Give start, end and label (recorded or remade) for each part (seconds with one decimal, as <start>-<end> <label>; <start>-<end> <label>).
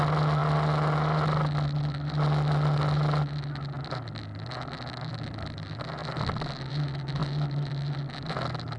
0.0-8.8 recorded